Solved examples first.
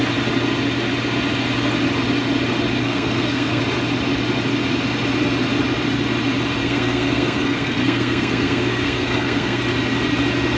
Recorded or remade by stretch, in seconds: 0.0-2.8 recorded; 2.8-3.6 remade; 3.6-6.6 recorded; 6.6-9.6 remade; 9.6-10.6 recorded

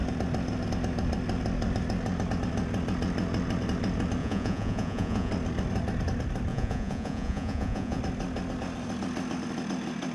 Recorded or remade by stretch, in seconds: 0.0-4.2 recorded; 4.2-5.3 remade; 5.3-6.5 recorded; 6.5-8.0 remade; 8.0-10.1 recorded

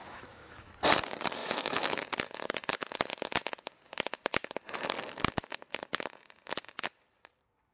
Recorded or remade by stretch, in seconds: 0.0-0.7 remade; 0.7-1.4 recorded; 1.4-2.0 remade; 2.0-7.7 recorded

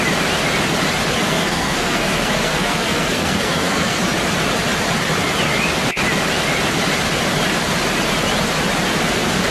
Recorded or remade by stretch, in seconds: 0.0-1.2 recorded; 1.2-4.0 remade; 4.0-9.5 recorded